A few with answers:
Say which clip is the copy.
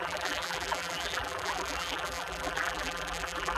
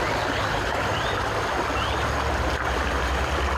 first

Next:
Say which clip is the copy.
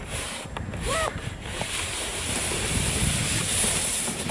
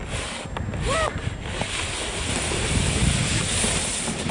first